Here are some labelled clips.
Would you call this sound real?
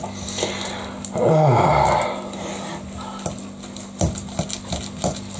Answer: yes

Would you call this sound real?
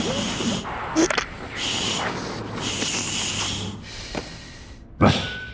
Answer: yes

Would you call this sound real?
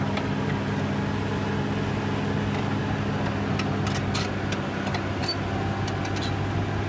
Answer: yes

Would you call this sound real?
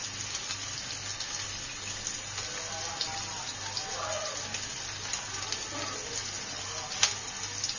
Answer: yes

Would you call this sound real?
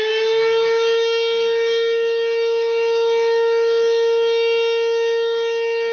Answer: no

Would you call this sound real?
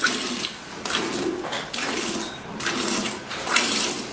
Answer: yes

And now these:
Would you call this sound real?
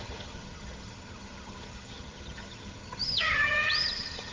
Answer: no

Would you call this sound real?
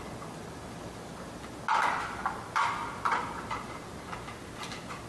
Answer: yes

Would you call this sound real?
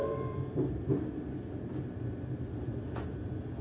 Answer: no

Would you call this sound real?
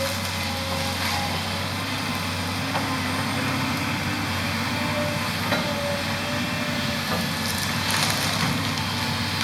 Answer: yes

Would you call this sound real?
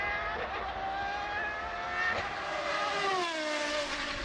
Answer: yes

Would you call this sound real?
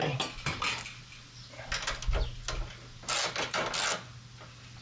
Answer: yes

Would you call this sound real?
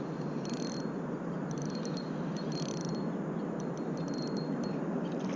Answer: yes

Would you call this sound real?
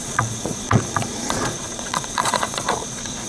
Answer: no